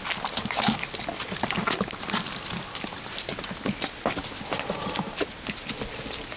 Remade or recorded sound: recorded